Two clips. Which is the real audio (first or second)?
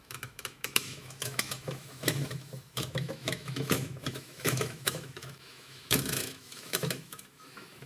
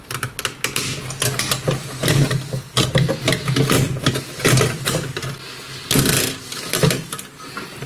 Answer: second